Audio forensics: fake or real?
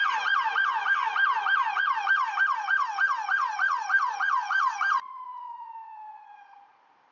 fake